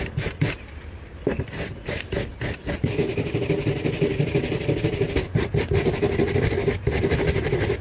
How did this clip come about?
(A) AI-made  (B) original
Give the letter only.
A